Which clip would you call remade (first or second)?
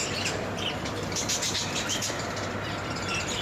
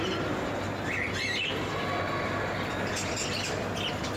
first